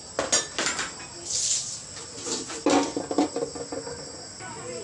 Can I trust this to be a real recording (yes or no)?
yes